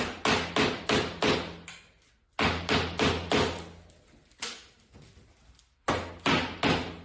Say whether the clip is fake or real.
real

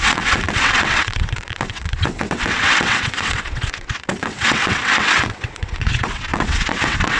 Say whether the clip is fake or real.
fake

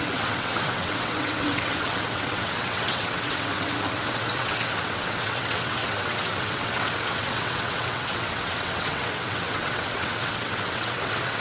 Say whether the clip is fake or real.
fake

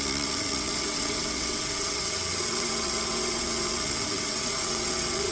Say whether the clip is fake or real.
fake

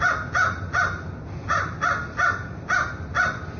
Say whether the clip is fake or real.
real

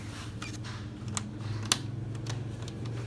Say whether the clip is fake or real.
real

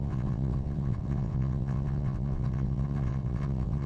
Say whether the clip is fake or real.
fake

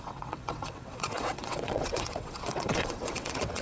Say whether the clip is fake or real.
fake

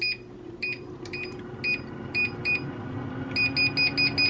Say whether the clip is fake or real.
real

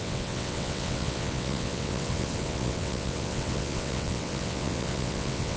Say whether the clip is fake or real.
fake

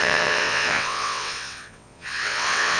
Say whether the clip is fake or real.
fake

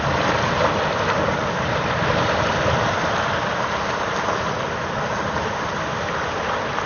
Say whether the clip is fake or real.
real